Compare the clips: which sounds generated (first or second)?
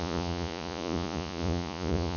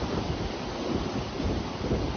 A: first